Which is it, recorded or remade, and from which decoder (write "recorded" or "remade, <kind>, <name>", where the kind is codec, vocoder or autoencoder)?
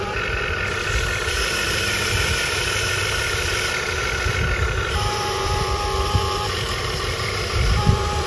remade, vocoder, BigVGAN v2